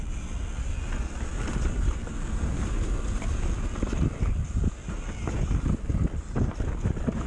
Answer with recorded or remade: recorded